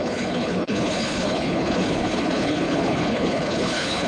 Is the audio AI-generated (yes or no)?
yes